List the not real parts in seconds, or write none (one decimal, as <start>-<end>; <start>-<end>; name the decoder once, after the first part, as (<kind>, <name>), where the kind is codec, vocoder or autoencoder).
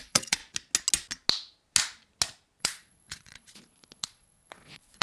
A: 0.0-0.4 (vocoder, Vocos); 2.6-5.0